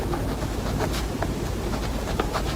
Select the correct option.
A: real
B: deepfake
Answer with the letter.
A